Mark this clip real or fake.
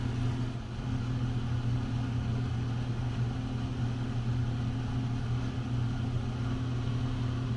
real